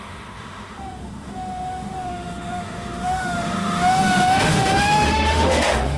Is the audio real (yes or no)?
no